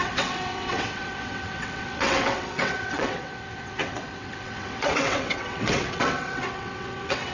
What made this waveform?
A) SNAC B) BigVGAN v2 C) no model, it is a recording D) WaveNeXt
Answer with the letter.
D